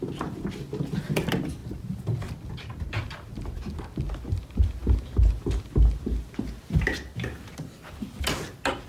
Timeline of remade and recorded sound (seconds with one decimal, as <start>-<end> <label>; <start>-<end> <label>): 0.0-8.9 recorded